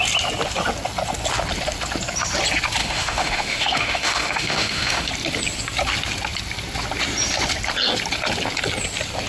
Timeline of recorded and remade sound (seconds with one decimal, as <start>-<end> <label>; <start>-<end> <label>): 0.0-2.8 recorded; 2.8-5.1 remade; 5.1-9.3 recorded